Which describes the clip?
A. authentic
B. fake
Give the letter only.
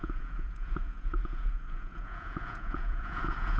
B